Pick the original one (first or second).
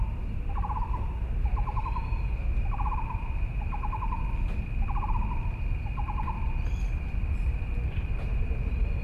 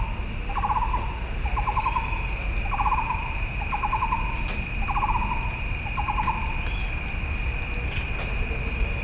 second